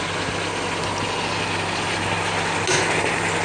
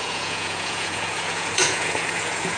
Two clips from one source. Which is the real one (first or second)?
first